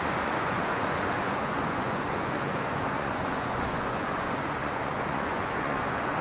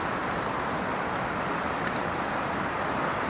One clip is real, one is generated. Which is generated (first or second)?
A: first